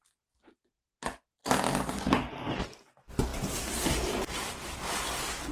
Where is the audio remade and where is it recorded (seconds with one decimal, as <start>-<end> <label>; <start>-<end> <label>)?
0.0-5.5 recorded